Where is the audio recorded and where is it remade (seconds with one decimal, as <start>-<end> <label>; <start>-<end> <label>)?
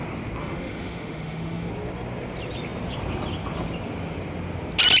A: 0.0-0.4 recorded; 0.4-1.7 remade; 1.7-5.0 recorded